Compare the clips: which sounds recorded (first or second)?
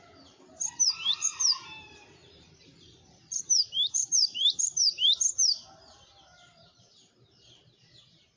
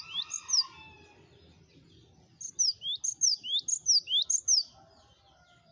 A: second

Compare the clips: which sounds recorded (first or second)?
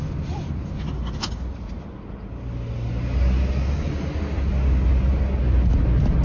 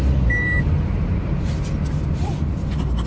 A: first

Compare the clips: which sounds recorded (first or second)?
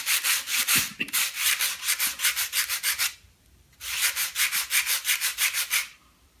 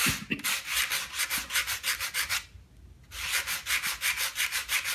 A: second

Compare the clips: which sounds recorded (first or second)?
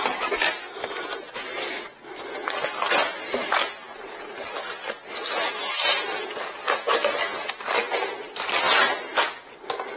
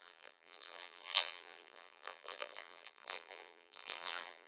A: first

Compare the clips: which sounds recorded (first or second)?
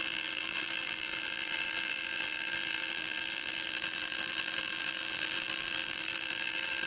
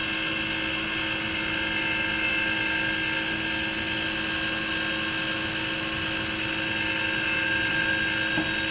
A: second